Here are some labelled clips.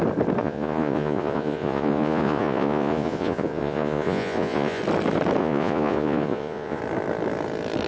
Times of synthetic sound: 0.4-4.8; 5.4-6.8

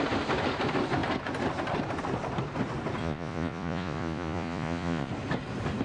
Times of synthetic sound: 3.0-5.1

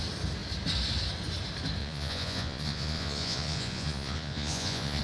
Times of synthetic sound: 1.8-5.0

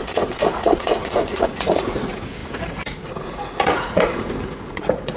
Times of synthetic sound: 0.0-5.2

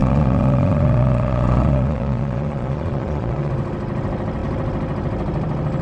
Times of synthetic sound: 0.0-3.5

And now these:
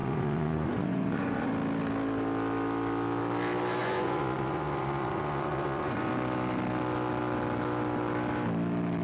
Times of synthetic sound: 0.0-1.5; 3.8-6.1

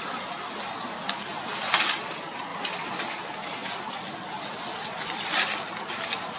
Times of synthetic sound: none